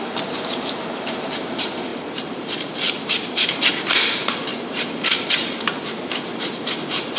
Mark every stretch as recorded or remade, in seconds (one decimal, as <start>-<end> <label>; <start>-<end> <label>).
0.0-7.2 remade